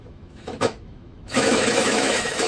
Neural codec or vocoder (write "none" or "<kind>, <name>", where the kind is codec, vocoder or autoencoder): autoencoder, DAC-VAE